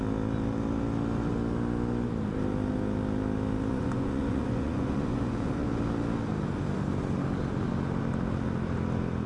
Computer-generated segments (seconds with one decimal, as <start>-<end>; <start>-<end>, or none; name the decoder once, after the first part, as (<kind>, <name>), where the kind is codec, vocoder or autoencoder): 3.7-5.7 (vocoder, Vocos)